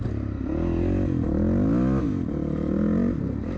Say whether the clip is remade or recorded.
recorded